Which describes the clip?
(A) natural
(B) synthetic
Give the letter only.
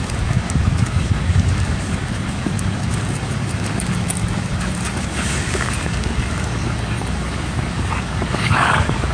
B